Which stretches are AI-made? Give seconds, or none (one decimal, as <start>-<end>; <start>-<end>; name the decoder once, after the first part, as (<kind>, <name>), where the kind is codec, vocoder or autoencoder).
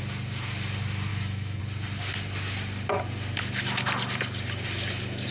1.1-1.6 (autoencoder, DAC-VAE)